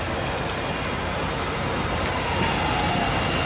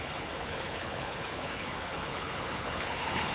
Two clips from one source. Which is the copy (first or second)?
second